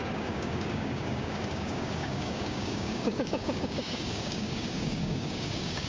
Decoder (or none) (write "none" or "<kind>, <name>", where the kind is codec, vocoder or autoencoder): codec, DAC